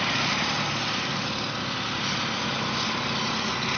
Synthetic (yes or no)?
no